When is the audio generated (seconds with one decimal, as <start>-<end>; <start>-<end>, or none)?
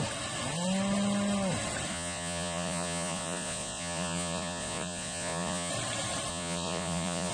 1.9-5.7; 6.3-7.3